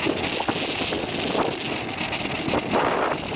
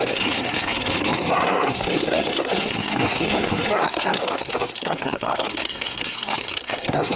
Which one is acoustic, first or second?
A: first